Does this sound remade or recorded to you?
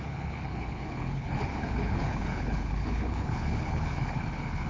remade